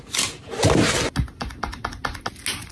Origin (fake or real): real